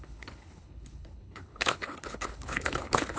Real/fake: fake